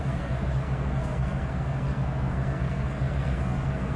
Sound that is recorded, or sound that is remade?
remade